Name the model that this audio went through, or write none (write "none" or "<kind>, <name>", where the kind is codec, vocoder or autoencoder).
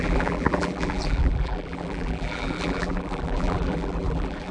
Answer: vocoder, BigVGAN v2